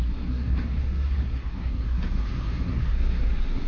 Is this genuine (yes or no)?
no